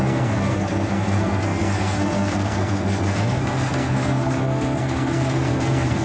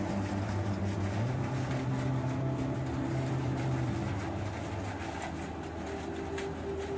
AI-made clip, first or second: first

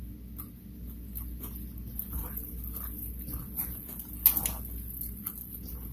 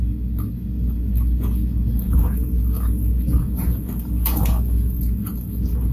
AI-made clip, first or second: second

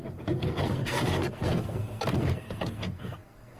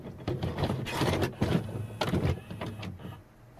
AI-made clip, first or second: first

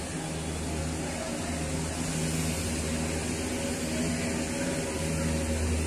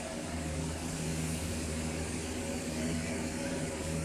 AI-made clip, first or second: second